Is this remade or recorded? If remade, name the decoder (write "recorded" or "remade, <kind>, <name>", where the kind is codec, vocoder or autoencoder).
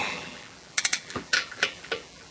remade, vocoder, BigVGAN v2